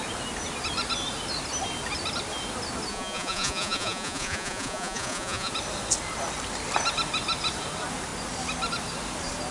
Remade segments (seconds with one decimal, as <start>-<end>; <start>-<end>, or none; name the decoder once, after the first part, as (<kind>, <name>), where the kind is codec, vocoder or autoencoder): 2.9-5.5 (vocoder, Vocos)